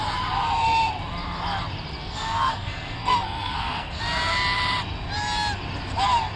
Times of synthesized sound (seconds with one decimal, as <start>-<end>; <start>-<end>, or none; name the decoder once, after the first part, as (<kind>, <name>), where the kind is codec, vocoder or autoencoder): 2.0-4.0 (codec, SNAC)